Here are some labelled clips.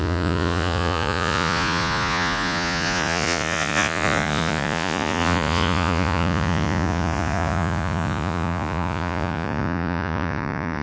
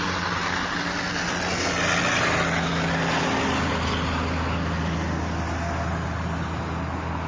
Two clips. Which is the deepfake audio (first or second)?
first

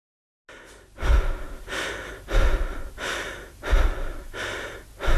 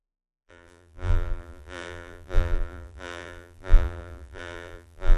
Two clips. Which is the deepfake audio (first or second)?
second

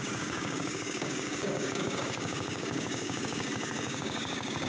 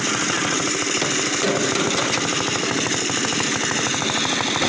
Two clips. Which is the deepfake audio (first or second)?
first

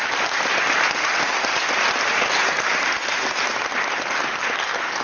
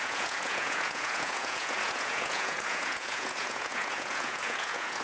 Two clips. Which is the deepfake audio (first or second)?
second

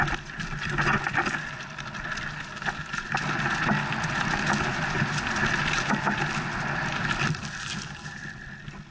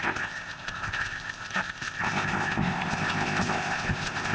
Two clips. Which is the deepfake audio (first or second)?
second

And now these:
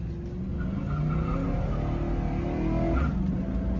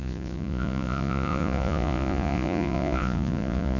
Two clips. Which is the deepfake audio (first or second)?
second